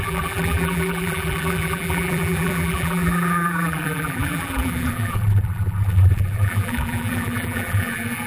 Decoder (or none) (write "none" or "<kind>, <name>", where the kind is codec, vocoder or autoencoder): vocoder, BigVGAN v2